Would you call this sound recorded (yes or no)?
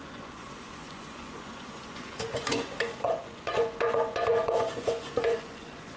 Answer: no